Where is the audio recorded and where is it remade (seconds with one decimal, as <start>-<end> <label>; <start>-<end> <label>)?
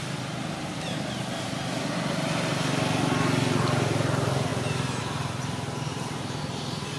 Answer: 0.0-7.0 recorded